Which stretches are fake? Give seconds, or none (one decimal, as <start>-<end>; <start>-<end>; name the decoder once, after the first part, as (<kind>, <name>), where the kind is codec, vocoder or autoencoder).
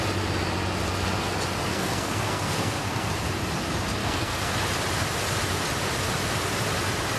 1.7-3.1 (codec, SNAC); 4.0-4.5